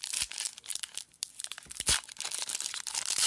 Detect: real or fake real